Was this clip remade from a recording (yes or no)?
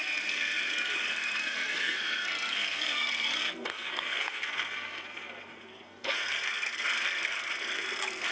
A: yes